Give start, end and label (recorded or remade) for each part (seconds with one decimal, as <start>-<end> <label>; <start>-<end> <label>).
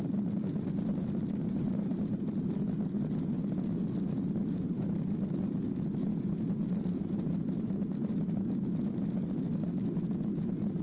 0.0-1.4 recorded; 1.4-2.0 remade; 2.0-4.4 recorded; 4.4-5.1 remade; 5.1-6.0 recorded; 6.0-7.7 remade; 7.7-10.8 recorded